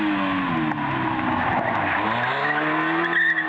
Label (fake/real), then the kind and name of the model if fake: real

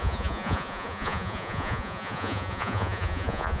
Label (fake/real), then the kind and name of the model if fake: fake, vocoder, Vocos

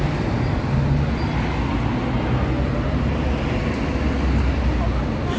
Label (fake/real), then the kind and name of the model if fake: real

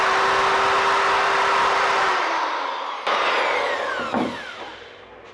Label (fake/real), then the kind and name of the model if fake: real